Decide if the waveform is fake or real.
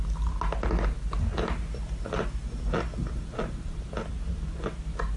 real